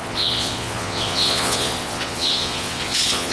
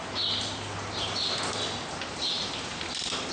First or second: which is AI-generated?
first